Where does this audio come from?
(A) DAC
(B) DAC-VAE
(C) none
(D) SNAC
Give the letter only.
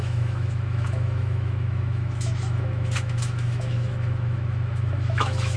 B